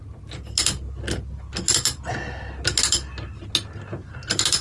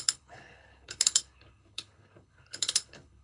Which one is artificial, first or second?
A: second